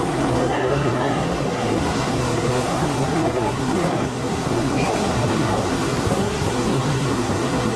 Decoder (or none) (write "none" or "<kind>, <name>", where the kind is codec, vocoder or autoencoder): codec, SNAC